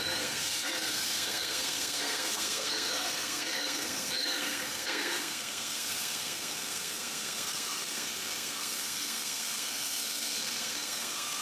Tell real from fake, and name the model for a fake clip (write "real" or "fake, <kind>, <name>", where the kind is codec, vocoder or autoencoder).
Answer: fake, codec, SNAC